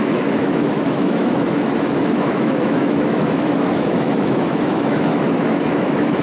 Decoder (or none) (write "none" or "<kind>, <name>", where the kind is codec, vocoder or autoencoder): autoencoder, DAC-VAE